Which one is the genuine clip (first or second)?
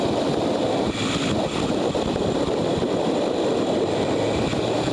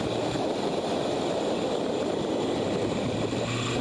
first